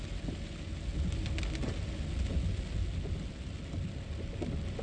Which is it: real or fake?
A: real